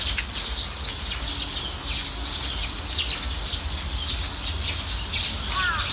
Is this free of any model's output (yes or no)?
yes